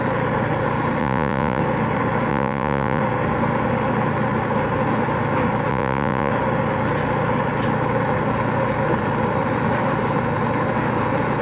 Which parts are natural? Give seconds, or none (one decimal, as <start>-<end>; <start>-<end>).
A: 0.0-1.0; 1.6-2.3; 3.0-5.7; 6.3-11.4